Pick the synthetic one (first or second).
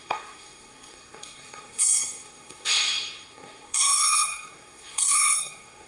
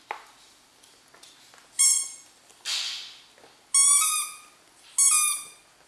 first